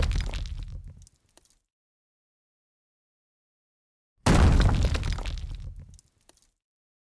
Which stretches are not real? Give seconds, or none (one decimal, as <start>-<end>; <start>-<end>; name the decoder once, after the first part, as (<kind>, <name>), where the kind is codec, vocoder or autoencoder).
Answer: none